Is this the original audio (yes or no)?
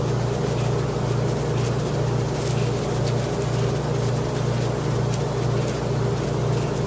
yes